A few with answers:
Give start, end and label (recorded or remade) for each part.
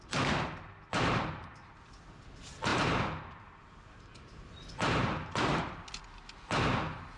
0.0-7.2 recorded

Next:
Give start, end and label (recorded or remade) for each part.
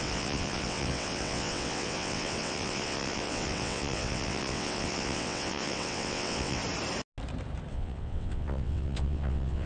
0.0-6.6 remade; 6.6-7.7 recorded; 7.7-9.7 remade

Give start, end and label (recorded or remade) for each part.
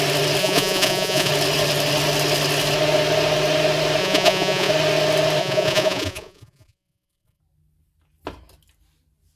0.0-0.4 recorded; 0.4-1.3 remade; 1.3-4.0 recorded; 4.0-4.7 remade; 4.7-5.4 recorded; 5.4-7.4 remade; 7.4-9.4 recorded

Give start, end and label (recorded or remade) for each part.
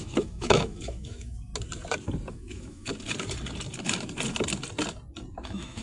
0.0-1.5 remade; 1.5-2.3 recorded; 2.3-2.9 remade; 2.9-5.3 recorded; 5.3-5.8 remade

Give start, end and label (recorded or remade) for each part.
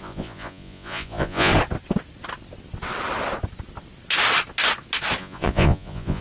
0.0-1.5 remade; 1.5-5.2 recorded; 5.2-6.2 remade